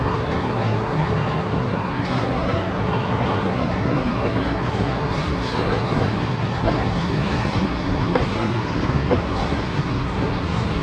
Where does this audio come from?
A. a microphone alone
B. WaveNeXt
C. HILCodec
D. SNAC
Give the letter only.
D